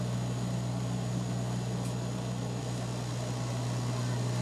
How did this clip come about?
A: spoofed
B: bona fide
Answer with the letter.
B